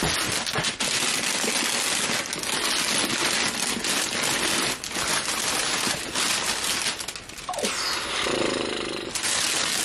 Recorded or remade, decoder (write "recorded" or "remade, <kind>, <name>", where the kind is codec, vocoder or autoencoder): recorded